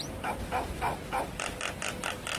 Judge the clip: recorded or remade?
recorded